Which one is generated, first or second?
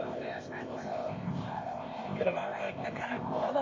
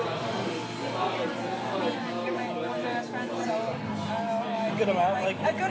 first